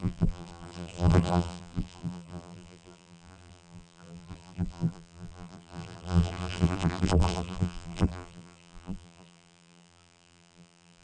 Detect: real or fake fake